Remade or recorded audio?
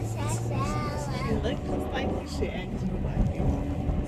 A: recorded